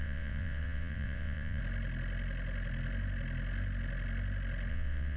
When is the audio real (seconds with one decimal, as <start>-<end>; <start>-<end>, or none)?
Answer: 1.6-4.7